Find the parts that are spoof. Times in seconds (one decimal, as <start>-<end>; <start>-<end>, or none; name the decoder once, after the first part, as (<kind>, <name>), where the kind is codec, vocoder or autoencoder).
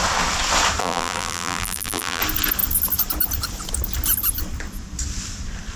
0.8-2.2 (vocoder, BigVGAN v2)